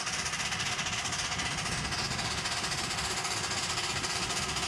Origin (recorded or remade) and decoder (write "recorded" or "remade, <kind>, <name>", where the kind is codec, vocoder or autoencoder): recorded